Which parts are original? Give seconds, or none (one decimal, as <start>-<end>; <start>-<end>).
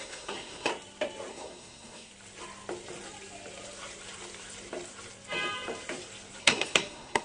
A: 0.7-1.3; 2.1-6.4